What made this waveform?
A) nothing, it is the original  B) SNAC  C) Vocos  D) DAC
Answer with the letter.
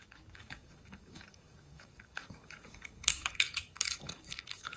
D